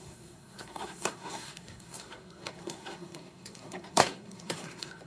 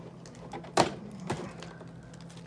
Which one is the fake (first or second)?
first